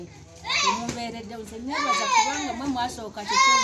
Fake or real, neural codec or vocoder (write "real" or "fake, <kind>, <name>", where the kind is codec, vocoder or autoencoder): real